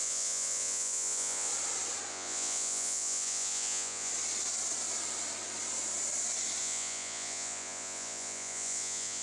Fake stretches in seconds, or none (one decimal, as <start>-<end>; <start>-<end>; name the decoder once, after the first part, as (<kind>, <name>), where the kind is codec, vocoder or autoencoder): 0.0-1.5 (vocoder, Vocos); 2.1-4.1; 6.6-9.2